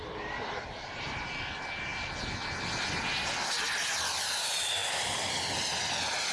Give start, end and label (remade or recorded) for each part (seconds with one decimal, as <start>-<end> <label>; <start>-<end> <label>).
0.0-6.3 recorded